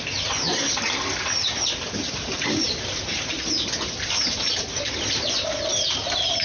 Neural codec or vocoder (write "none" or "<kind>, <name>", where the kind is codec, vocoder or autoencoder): none